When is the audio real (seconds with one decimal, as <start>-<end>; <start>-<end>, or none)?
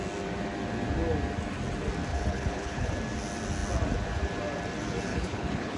0.0-2.1; 2.9-5.1